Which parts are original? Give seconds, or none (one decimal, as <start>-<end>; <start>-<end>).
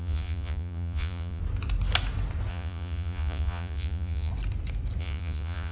1.4-2.5; 4.3-5.0